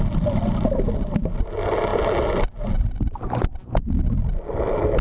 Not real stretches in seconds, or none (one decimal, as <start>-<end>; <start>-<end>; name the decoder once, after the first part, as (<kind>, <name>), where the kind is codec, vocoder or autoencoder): none